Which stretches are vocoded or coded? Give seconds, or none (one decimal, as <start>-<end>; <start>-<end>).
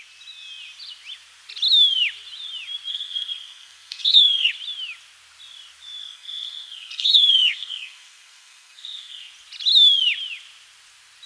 2.9-4.5; 6.0-9.3